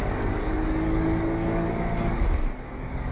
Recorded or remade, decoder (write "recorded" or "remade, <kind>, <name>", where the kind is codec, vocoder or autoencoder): remade, codec, DAC